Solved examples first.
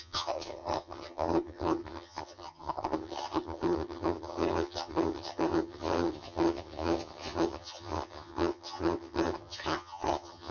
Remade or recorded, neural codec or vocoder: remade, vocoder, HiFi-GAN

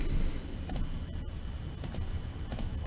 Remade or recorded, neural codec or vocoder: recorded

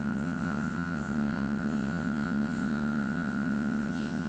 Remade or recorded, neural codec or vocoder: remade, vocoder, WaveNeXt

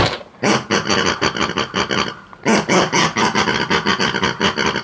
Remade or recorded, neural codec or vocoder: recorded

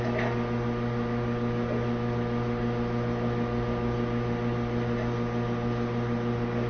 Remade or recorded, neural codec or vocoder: recorded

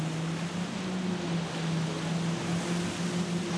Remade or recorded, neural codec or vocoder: recorded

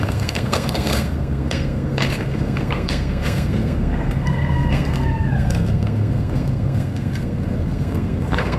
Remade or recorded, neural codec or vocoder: remade, codec, SNAC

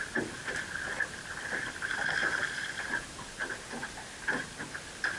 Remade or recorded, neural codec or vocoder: recorded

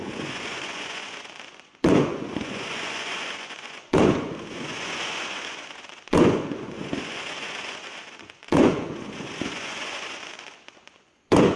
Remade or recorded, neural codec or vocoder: remade, vocoder, Vocos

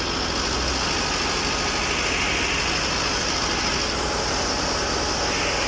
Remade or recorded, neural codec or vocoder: recorded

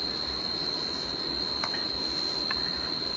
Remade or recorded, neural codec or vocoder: remade, vocoder, BigVGAN v2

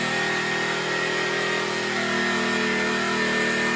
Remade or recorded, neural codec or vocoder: recorded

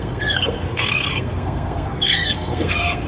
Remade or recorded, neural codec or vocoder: remade, codec, SNAC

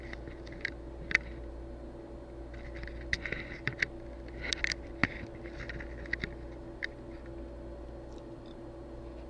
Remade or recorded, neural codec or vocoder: recorded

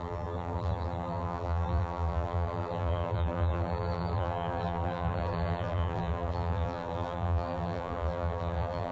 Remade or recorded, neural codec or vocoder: remade, vocoder, BigVGAN v2